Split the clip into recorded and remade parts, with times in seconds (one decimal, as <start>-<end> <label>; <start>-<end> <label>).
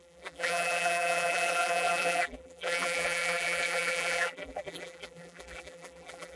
0.0-6.4 remade